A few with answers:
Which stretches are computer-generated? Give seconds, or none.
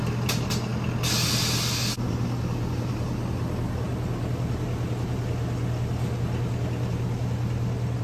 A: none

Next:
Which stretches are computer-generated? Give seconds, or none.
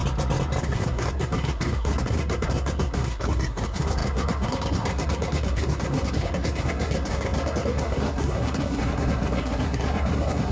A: 0.6-10.5 (codec, SNAC)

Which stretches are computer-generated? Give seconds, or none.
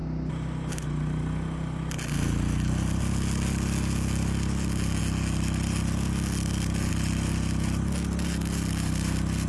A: none